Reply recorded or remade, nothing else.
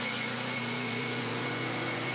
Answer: remade